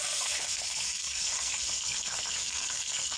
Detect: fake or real fake